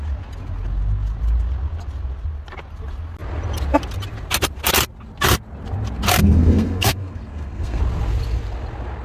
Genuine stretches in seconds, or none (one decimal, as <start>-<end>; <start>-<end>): 0.0-6.2; 7.8-9.0